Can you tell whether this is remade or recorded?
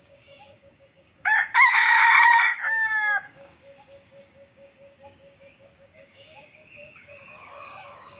remade